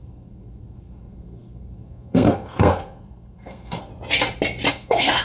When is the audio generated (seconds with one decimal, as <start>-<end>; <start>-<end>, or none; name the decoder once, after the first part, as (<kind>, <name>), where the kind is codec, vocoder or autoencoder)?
0.0-3.9 (codec, SNAC); 4.7-5.2